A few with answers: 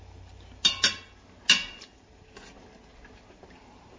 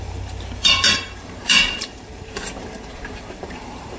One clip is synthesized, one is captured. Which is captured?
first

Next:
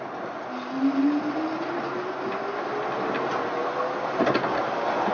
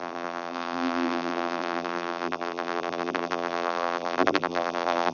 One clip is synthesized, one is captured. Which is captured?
first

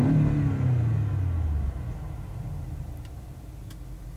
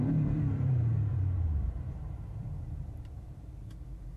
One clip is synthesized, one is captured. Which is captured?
first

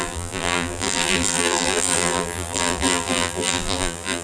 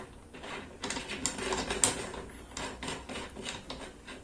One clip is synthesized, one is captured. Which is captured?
second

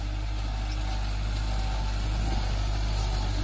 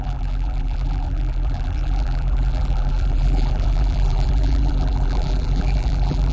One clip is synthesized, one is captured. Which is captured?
first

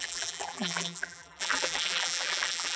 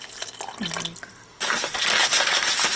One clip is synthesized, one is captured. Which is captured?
second